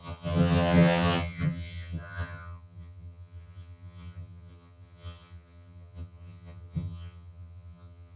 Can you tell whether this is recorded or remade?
remade